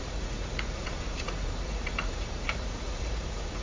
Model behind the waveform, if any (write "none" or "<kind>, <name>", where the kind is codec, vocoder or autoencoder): vocoder, Vocos